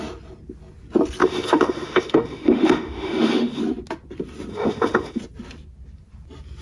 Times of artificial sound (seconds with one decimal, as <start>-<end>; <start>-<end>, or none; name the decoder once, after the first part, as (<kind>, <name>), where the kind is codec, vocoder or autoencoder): 1.2-3.6 (autoencoder, DAC-VAE); 4.5-5.2